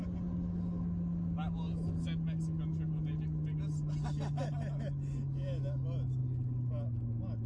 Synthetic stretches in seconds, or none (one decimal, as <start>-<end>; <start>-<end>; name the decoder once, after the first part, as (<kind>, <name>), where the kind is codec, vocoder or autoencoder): none